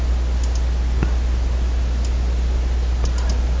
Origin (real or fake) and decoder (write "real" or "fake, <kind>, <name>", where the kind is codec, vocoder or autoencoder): real